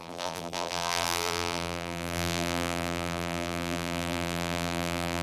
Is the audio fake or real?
fake